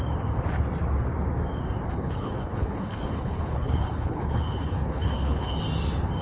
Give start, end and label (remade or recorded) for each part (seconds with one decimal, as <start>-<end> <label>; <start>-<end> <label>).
0.0-1.9 recorded; 1.9-5.6 remade; 5.6-6.2 recorded